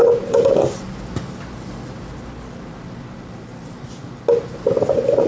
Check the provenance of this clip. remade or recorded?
recorded